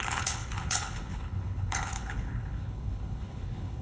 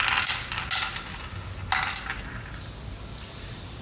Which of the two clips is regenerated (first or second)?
first